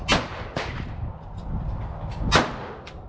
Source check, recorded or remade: recorded